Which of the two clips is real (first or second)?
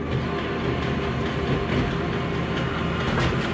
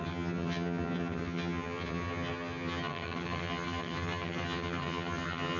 first